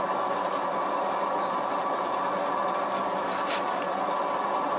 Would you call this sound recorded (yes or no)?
yes